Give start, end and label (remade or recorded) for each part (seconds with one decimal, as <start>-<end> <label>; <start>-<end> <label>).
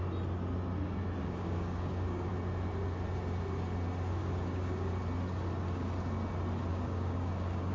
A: 0.0-1.2 recorded; 1.2-2.3 remade; 2.3-4.2 recorded; 4.2-4.9 remade; 4.9-6.7 recorded; 6.7-7.7 remade